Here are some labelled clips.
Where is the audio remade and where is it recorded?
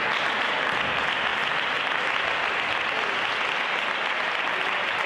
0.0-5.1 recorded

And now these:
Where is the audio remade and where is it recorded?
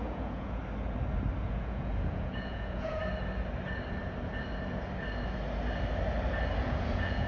0.0-0.6 remade; 0.6-1.4 recorded; 1.4-3.0 remade; 3.0-6.6 recorded; 6.6-7.3 remade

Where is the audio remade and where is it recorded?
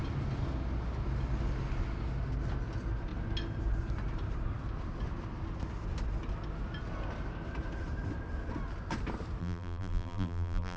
0.0-9.4 recorded; 9.4-10.8 remade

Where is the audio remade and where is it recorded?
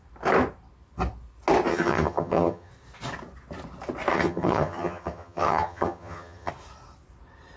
0.0-1.7 recorded; 1.7-2.7 remade; 2.7-4.1 recorded; 4.1-6.5 remade; 6.5-7.6 recorded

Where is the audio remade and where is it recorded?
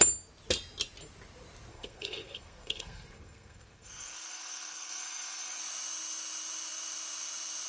0.0-1.7 recorded; 1.7-5.6 remade; 5.6-7.7 recorded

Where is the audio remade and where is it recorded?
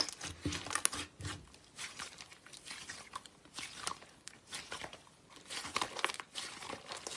0.0-2.3 recorded; 2.3-6.1 remade; 6.1-7.2 recorded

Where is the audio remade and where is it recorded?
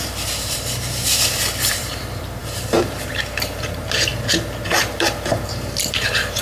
0.0-4.1 remade; 4.1-5.3 recorded; 5.3-6.4 remade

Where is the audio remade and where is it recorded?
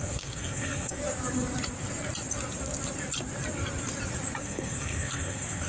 0.0-1.0 remade; 1.0-4.4 recorded; 4.4-5.7 remade